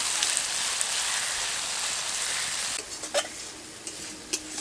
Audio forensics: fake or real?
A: real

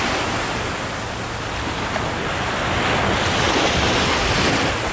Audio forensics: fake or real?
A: real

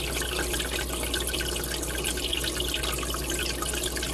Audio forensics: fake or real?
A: real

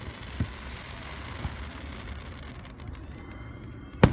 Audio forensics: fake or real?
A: real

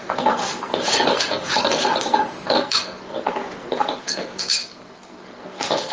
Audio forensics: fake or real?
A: fake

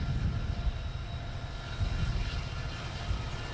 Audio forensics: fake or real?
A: real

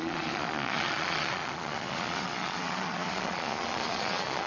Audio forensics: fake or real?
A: fake